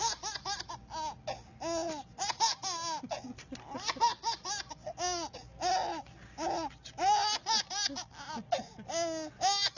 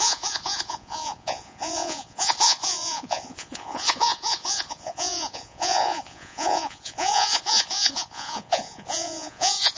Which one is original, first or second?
first